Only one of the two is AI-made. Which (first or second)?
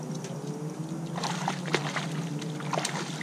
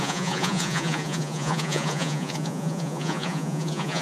second